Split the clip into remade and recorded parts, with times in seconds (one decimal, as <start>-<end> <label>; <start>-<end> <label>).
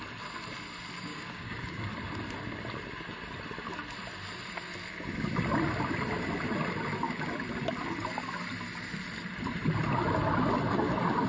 0.0-1.1 recorded; 1.1-1.8 remade; 1.8-11.3 recorded